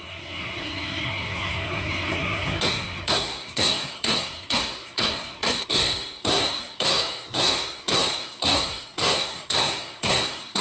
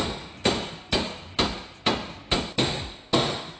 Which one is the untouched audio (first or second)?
second